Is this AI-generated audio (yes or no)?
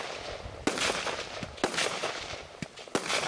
no